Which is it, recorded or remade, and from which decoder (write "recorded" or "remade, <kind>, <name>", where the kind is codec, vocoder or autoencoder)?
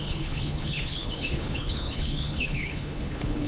remade, codec, HILCodec